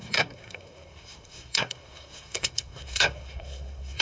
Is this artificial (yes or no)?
yes